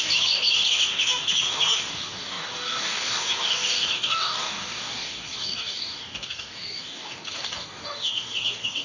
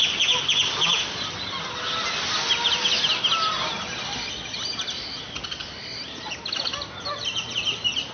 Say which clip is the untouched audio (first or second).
second